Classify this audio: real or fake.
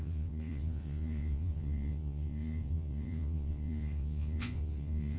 fake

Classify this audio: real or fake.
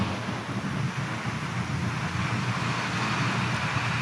real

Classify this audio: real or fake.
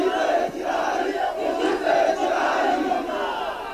real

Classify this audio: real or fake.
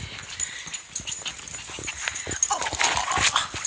real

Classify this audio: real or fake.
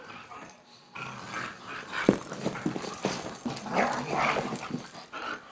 real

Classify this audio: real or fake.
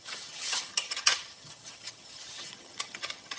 fake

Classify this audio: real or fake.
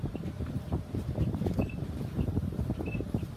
fake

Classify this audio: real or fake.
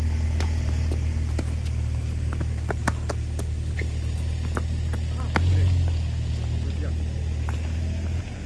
real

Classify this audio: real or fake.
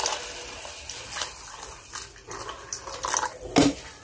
real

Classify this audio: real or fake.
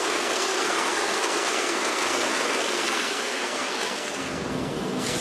fake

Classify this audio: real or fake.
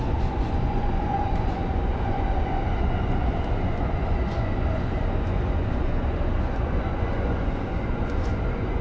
fake